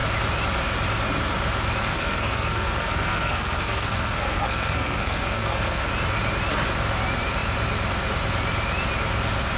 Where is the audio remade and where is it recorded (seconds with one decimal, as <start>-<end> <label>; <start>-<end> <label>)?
0.0-1.8 recorded; 1.8-5.9 remade; 5.9-9.6 recorded